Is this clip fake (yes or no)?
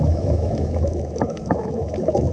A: yes